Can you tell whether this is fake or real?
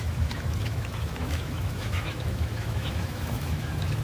fake